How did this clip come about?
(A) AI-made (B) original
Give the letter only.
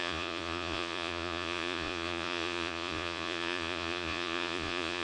A